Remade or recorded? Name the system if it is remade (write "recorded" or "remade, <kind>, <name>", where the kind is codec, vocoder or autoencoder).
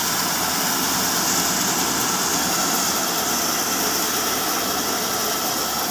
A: recorded